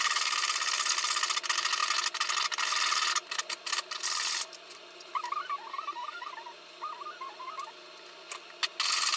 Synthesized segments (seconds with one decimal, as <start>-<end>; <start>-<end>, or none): 5.7-6.3